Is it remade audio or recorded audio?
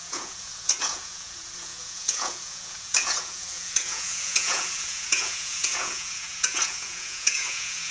remade